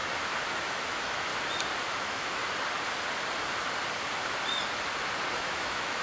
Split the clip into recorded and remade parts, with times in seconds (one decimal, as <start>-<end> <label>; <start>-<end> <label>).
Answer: 0.0-0.6 recorded; 0.6-1.3 remade; 1.3-2.0 recorded; 2.0-2.4 remade; 2.4-5.3 recorded; 5.3-6.0 remade

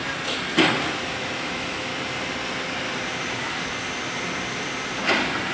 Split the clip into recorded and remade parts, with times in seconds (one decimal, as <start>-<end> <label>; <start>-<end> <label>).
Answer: 0.0-1.1 recorded; 1.1-1.9 remade; 1.9-5.5 recorded

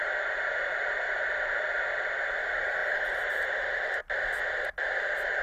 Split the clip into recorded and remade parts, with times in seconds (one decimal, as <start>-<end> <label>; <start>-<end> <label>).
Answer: 0.0-5.4 recorded